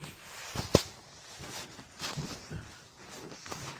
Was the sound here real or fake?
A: real